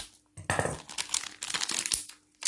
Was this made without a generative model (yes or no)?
yes